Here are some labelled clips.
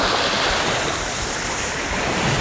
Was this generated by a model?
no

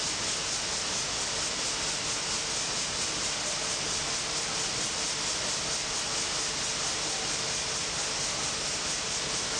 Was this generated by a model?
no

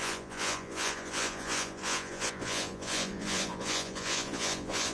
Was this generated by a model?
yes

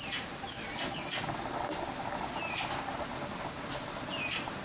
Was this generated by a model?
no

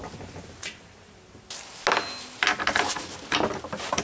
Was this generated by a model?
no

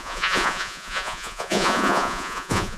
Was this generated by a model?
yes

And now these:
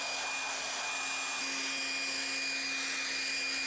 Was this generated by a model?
no